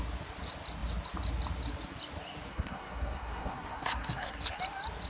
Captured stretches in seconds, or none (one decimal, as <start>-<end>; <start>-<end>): 0.0-2.5; 4.6-5.1